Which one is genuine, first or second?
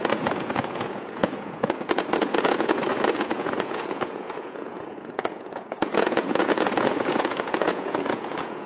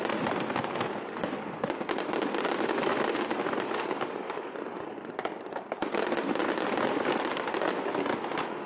second